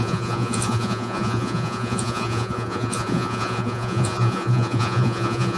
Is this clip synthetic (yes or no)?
yes